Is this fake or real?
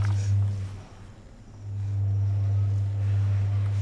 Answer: real